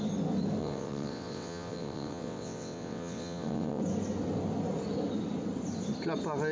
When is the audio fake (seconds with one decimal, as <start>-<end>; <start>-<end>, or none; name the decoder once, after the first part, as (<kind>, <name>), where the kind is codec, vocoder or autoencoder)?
0.6-3.8 (vocoder, WaveNeXt)